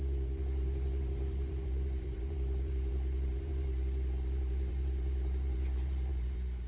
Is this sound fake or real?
fake